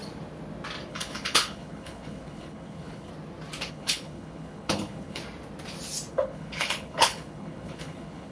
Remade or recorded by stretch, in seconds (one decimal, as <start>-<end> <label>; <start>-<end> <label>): 0.0-0.9 recorded; 0.9-3.1 remade; 3.1-3.7 recorded; 3.7-5.2 remade; 5.2-6.1 recorded; 6.1-8.3 remade

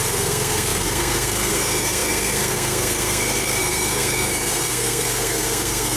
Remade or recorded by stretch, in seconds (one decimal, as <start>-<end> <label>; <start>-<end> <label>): 0.0-6.0 remade